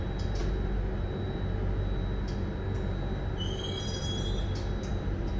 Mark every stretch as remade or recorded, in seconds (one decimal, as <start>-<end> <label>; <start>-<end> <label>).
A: 0.0-5.4 recorded